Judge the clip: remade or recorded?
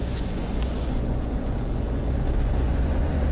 remade